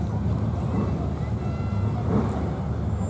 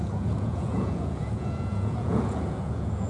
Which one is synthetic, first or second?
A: second